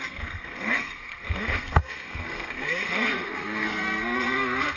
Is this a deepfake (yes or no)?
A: yes